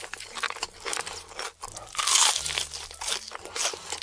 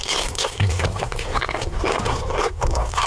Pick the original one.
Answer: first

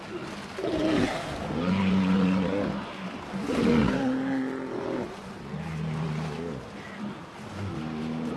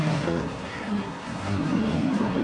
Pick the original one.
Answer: first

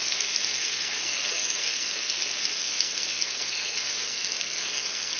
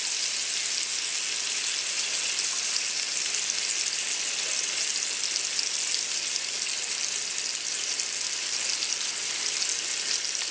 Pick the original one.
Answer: second